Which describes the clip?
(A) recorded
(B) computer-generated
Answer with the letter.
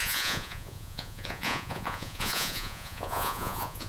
B